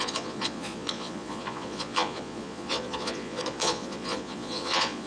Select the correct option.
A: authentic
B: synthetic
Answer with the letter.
B